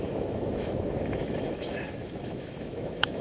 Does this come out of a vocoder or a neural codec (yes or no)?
yes